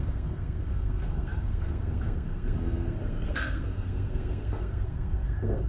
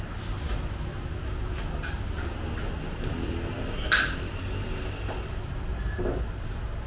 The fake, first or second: first